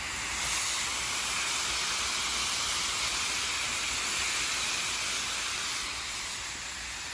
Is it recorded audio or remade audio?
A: recorded